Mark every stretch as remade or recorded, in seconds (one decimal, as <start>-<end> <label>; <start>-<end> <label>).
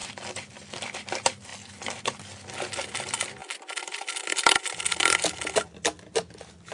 0.0-6.7 recorded